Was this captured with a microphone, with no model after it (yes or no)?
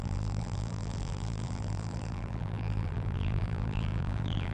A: no